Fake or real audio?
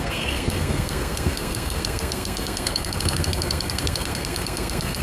fake